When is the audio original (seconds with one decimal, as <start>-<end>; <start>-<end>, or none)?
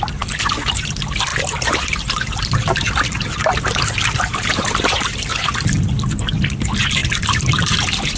0.0-1.3; 2.9-5.3; 6.0-7.0